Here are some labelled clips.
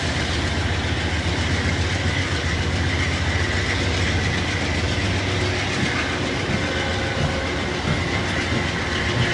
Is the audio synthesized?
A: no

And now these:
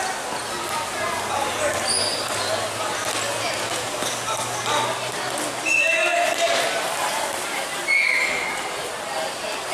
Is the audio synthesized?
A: no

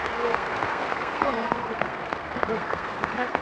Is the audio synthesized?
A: yes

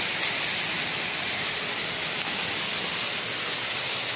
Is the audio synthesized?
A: no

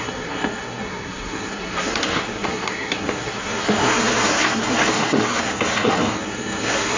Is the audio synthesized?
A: yes